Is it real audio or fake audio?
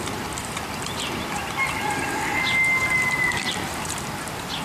real